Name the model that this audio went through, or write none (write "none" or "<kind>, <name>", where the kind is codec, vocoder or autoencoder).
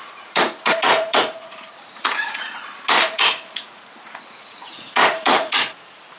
vocoder, Vocos